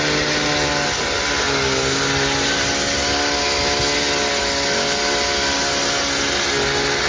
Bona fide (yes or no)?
yes